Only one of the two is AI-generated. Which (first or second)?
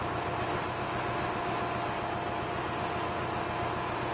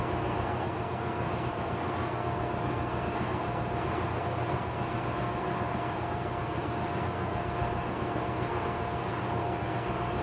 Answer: second